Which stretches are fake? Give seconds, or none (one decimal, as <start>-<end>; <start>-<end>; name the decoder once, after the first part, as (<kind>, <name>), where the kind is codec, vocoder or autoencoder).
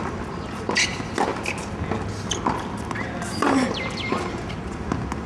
none